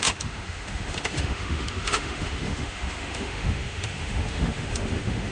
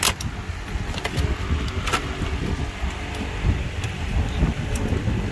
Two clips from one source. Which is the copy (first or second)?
first